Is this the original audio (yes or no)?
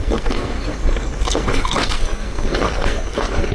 no